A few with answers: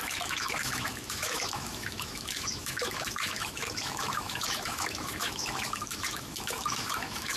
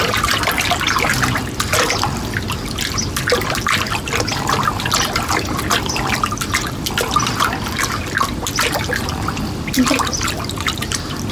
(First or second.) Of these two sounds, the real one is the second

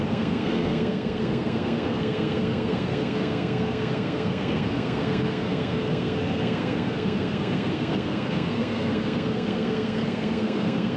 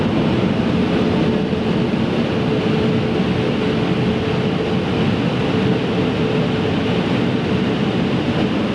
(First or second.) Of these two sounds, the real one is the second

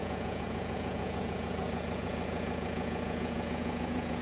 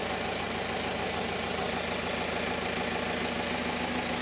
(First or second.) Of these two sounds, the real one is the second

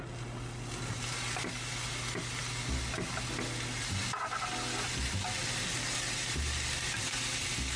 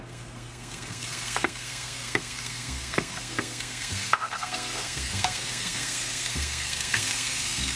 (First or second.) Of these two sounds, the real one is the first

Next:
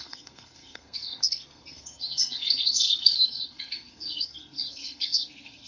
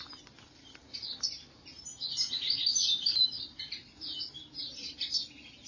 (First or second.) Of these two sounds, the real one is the second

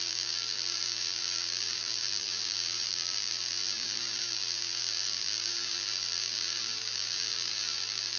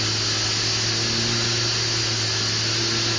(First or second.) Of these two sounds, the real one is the second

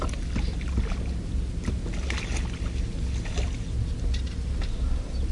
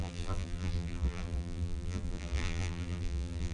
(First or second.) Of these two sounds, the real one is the first